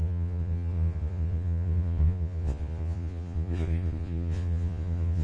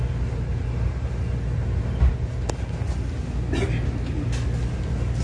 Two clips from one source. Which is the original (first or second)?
second